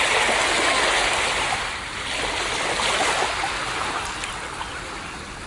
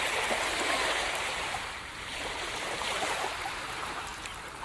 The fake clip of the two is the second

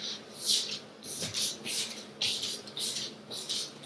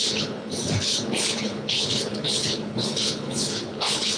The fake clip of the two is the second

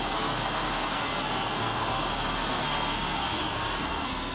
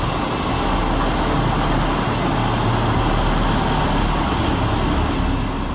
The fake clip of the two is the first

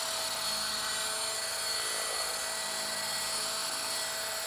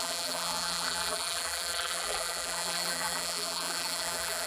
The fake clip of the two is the second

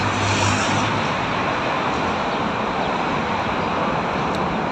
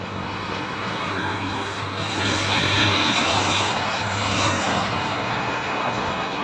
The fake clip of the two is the second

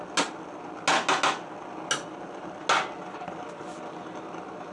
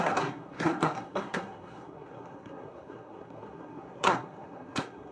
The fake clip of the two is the second